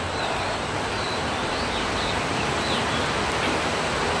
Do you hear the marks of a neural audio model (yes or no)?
yes